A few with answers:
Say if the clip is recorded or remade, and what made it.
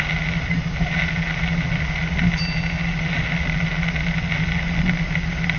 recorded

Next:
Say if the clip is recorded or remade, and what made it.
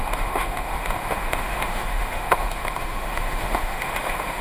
remade, autoencoder, DAC-VAE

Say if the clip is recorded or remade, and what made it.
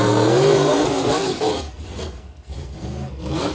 remade, codec, SNAC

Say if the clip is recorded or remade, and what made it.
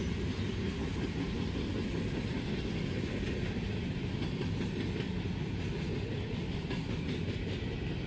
recorded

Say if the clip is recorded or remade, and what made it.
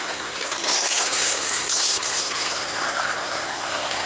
remade, codec, SNAC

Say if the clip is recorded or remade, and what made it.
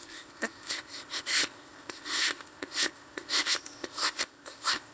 remade, codec, ZipCodec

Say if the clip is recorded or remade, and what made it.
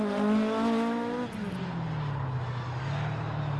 recorded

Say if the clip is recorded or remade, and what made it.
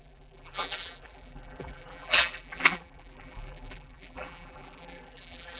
remade, vocoder, BigVGAN v2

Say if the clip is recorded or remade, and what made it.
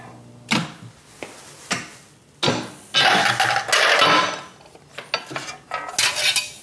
recorded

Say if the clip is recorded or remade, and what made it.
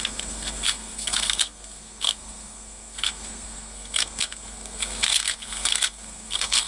remade, codec, SNAC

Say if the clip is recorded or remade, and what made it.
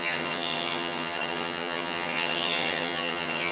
remade, vocoder, HiFi-GAN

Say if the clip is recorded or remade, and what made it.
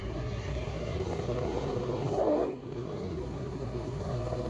remade, codec, SNAC